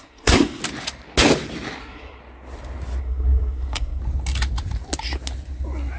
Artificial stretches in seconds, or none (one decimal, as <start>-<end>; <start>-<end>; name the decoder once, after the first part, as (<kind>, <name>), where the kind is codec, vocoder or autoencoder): 0.0-0.6 (codec, SNAC); 1.8-2.2; 3.0-4.0

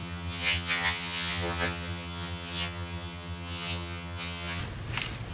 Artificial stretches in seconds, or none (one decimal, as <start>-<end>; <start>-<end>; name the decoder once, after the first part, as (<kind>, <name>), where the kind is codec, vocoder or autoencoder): 0.0-4.6 (vocoder, HiFi-GAN)